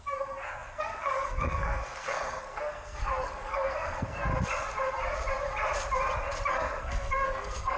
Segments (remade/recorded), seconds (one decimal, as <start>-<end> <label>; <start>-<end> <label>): 0.0-4.3 remade; 4.3-6.5 recorded; 6.5-7.8 remade